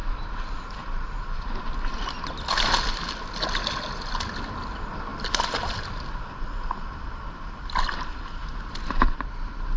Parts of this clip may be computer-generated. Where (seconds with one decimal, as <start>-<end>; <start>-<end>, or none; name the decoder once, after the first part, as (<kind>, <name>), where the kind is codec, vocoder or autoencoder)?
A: none